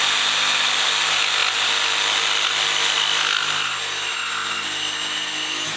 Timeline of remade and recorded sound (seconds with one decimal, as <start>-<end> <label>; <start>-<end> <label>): 0.0-5.8 recorded